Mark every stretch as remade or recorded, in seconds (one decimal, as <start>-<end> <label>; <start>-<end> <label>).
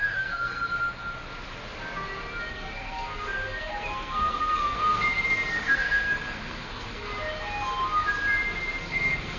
0.0-0.8 remade; 0.8-2.5 recorded; 2.5-7.1 remade; 7.1-8.8 recorded; 8.8-9.4 remade